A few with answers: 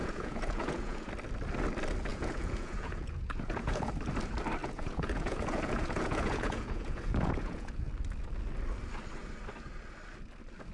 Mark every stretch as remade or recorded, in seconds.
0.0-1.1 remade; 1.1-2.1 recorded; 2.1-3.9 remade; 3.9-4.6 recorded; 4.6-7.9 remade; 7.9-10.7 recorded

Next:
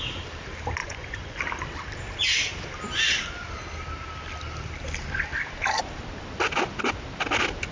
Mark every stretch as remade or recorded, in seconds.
0.0-0.8 recorded; 0.8-1.4 remade; 1.4-7.7 recorded

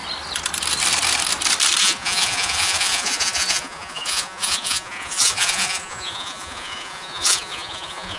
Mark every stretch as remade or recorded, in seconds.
0.0-1.8 recorded; 1.8-8.2 remade